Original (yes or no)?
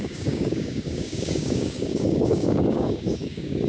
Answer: no